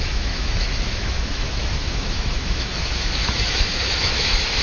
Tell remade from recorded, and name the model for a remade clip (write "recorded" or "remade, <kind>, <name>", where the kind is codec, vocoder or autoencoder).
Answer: remade, autoencoder, DAC-VAE